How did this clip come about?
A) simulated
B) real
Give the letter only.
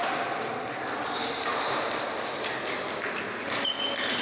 B